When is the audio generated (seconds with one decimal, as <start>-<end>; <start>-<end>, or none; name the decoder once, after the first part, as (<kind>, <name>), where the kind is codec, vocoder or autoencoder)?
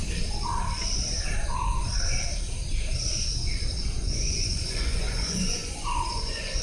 4.0-6.6 (vocoder, Vocos)